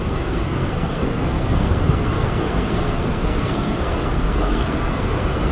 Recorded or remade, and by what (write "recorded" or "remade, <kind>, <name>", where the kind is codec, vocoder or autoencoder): remade, codec, SNAC